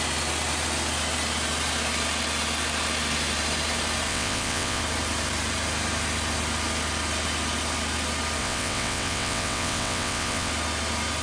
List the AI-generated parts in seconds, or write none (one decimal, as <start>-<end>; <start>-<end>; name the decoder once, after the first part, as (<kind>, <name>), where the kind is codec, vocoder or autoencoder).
4.1-4.8 (vocoder, WaveNeXt); 8.4-10.5